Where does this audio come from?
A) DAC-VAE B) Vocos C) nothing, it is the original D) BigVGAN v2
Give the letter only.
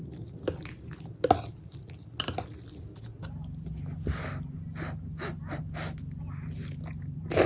C